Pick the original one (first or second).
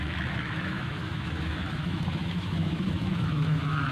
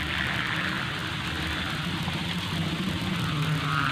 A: second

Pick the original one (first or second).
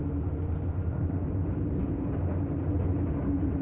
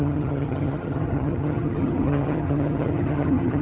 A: first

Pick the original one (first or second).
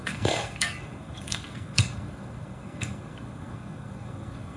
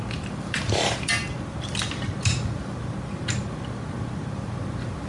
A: second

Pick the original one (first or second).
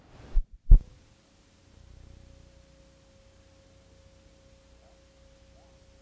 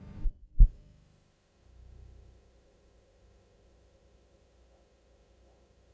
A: first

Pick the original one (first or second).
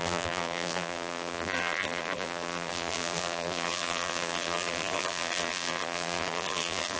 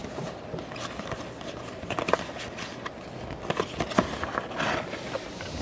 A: second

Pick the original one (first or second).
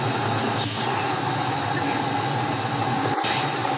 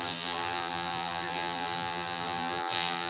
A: first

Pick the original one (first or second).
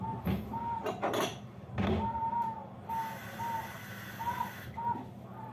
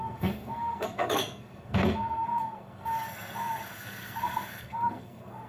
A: first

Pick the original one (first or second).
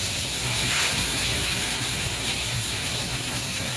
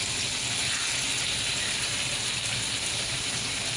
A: second